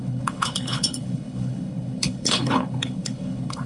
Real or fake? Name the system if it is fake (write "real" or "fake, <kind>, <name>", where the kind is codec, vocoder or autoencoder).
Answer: fake, codec, HILCodec